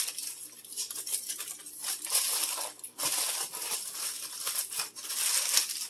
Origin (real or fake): real